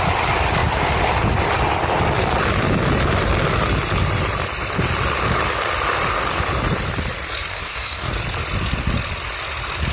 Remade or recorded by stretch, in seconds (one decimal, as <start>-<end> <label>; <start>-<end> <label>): 0.0-7.5 recorded; 7.5-8.1 remade; 8.1-9.9 recorded